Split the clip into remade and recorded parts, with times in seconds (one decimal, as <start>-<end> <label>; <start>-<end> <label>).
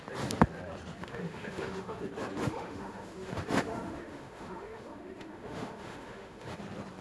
0.0-1.0 recorded; 1.0-2.0 remade; 2.0-2.4 recorded; 2.4-6.6 remade; 6.6-7.0 recorded